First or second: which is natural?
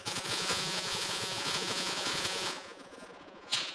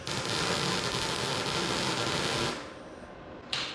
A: second